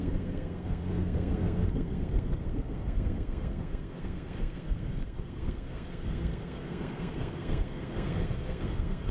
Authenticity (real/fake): fake